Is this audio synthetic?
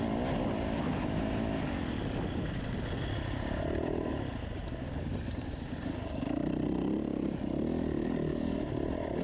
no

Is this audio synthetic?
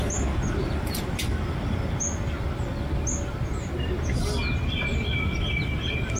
no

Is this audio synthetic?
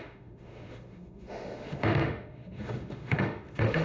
yes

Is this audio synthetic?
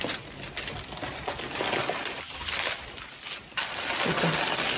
no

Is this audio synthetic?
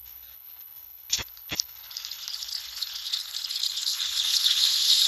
yes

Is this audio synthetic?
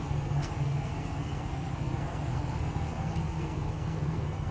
yes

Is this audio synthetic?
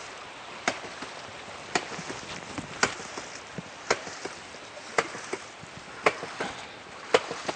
no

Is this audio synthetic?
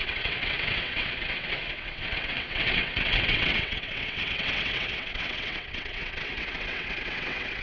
yes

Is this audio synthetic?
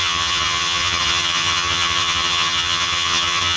yes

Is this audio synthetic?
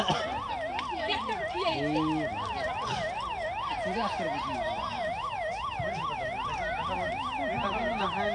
no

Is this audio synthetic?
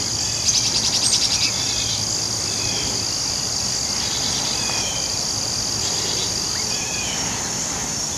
yes